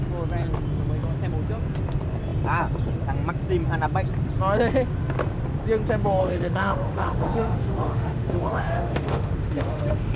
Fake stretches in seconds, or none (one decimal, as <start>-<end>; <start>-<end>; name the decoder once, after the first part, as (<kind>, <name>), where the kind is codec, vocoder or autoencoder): 6.2-10.2 (autoencoder, DAC-VAE)